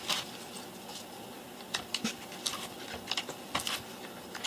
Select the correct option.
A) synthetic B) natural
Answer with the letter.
B